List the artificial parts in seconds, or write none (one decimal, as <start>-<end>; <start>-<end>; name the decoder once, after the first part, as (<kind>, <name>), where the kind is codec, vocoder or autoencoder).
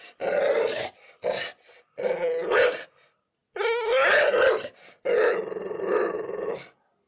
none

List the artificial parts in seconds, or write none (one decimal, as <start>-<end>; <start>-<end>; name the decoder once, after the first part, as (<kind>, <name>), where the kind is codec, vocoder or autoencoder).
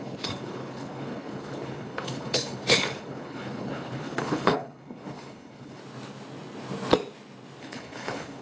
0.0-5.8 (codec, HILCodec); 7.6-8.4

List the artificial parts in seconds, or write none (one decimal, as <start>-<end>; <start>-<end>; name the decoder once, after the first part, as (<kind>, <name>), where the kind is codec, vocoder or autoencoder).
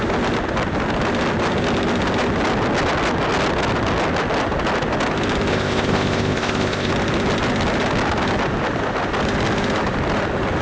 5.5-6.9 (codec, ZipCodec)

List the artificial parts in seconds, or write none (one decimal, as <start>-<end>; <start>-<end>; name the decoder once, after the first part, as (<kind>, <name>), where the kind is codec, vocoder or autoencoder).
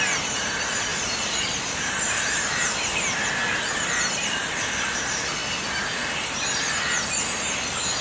0.9-3.1 (vocoder, BigVGAN v2)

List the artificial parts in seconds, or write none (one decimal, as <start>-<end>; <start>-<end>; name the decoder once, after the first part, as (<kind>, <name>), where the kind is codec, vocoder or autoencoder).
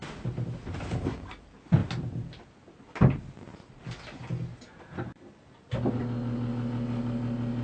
none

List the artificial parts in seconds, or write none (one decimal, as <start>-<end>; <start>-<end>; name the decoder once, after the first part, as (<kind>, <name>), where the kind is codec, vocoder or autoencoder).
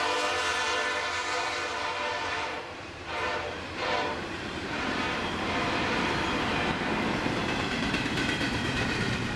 0.5-5.7 (vocoder, BigVGAN v2); 7.4-9.4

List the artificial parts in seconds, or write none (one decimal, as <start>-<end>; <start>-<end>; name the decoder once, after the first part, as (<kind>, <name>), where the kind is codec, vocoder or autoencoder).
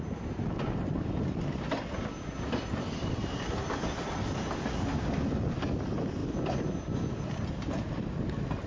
none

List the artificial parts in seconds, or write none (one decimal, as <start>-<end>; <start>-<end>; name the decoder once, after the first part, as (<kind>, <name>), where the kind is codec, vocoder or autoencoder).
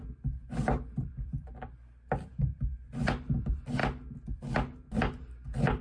none